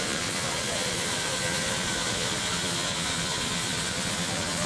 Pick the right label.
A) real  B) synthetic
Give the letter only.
B